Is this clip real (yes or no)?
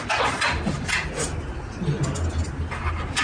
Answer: yes